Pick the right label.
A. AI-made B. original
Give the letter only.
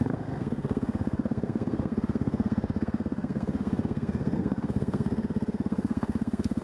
A